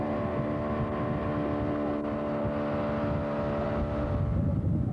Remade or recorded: recorded